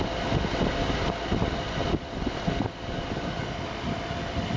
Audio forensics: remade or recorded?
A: recorded